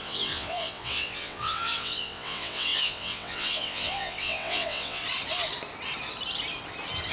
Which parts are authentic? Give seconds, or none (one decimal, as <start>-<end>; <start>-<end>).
5.0-7.1